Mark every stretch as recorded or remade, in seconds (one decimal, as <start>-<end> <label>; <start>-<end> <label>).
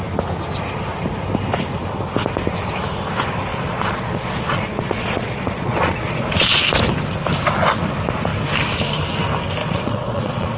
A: 0.0-3.5 recorded; 3.5-6.6 remade; 6.6-9.6 recorded; 9.6-10.6 remade